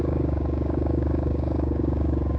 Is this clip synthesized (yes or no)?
yes